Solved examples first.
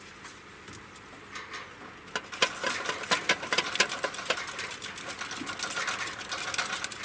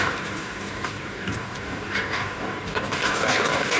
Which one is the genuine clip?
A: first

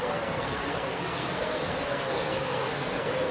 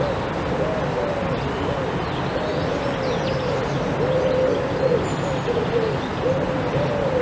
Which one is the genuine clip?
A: second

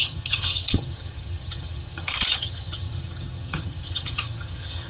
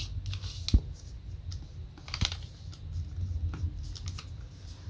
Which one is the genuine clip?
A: second